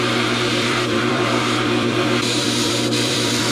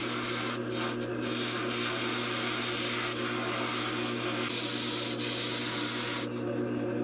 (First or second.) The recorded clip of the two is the second